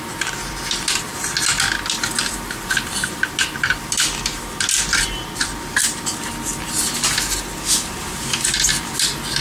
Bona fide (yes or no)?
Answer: yes